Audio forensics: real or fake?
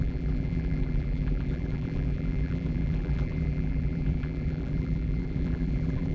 fake